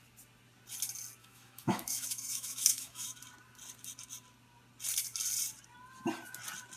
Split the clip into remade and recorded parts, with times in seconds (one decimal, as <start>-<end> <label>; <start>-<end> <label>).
0.0-1.2 recorded; 1.2-3.2 remade; 3.2-6.8 recorded